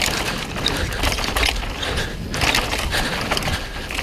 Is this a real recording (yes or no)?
yes